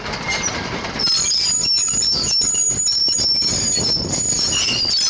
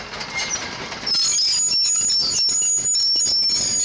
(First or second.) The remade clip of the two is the first